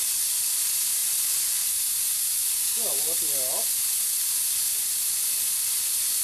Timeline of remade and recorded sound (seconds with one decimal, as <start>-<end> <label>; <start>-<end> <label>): 0.0-6.2 recorded